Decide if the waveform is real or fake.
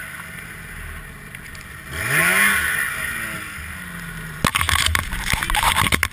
real